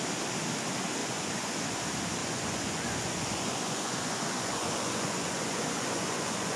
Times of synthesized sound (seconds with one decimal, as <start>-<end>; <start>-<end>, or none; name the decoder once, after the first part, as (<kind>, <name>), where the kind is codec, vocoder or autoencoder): 1.0-1.8 (vocoder, Vocos); 2.2-6.6